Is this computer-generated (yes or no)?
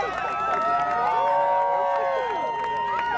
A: no